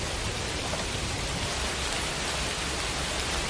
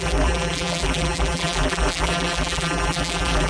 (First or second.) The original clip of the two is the first